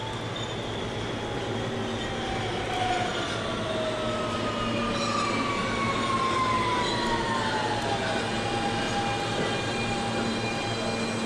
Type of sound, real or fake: real